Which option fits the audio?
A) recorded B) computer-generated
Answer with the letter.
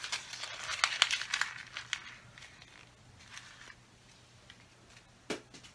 A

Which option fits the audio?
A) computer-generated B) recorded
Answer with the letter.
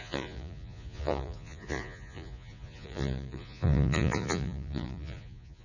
A